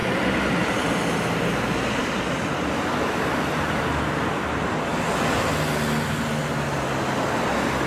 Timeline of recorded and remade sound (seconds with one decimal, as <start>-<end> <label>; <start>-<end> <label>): 0.0-7.9 recorded